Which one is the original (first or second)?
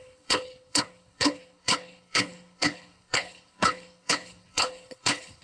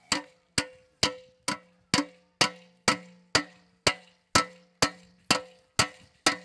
second